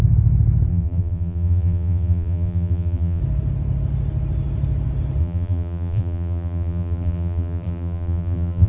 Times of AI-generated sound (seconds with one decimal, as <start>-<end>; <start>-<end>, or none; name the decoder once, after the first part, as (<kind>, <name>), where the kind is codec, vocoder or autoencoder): 0.7-3.2 (vocoder, BigVGAN v2); 5.2-8.7